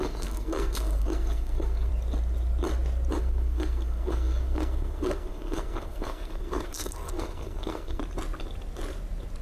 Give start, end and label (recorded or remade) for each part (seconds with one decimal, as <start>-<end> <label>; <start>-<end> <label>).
0.0-1.9 remade; 1.9-3.2 recorded; 3.2-8.0 remade; 8.0-9.4 recorded